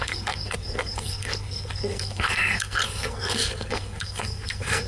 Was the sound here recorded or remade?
remade